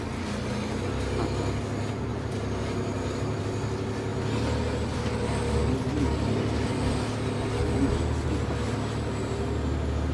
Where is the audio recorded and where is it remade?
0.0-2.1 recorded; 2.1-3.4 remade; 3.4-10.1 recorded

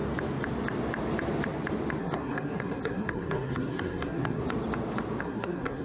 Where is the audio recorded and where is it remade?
0.0-2.0 recorded; 2.0-4.4 remade; 4.4-5.2 recorded; 5.2-5.8 remade

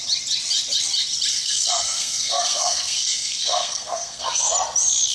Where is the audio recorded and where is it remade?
0.0-1.3 recorded; 1.3-4.4 remade; 4.4-5.1 recorded

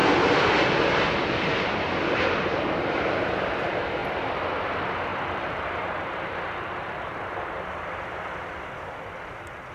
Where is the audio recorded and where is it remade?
0.0-5.1 recorded; 5.1-8.0 remade; 8.0-9.7 recorded

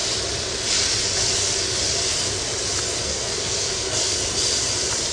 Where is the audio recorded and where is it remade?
0.0-3.0 recorded; 3.0-4.2 remade; 4.2-5.1 recorded

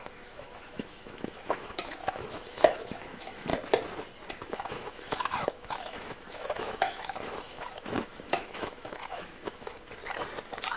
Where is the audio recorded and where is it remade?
0.0-3.5 remade; 3.5-4.3 recorded; 4.3-10.0 remade; 10.0-10.8 recorded

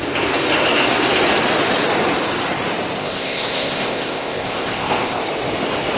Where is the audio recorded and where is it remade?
0.0-3.0 recorded; 3.0-5.2 remade; 5.2-6.0 recorded

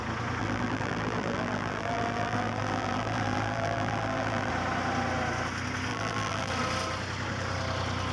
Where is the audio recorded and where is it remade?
0.0-0.4 recorded; 0.4-4.5 remade; 4.5-5.9 recorded; 5.9-6.5 remade; 6.5-8.1 recorded